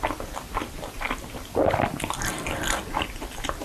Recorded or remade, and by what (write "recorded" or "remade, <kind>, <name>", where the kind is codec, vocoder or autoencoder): recorded